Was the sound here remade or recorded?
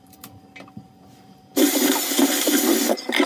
remade